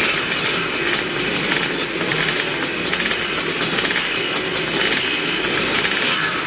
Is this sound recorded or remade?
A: recorded